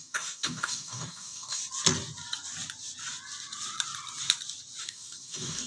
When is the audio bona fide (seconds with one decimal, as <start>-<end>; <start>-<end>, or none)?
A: 1.6-4.8